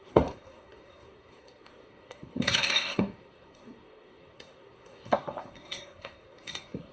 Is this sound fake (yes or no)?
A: yes